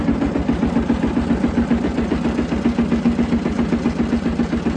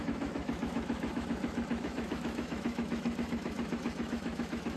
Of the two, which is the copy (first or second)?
second